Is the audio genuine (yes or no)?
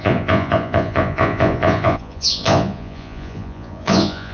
no